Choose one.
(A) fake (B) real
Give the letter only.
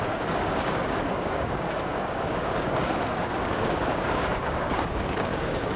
A